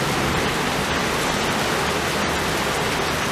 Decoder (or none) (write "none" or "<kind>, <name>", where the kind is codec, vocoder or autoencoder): none